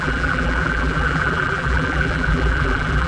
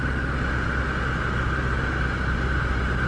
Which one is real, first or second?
second